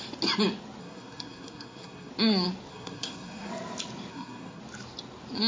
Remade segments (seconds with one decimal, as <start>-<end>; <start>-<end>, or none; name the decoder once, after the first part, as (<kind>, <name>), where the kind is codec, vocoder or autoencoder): 0.8-2.1 (codec, SNAC); 2.7-3.5; 4.1-4.6